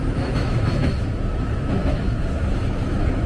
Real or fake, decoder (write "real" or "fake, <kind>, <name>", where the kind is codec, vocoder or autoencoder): fake, autoencoder, DAC-VAE